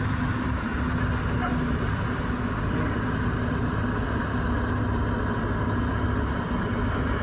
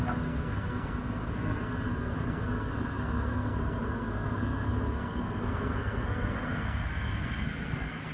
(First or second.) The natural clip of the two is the first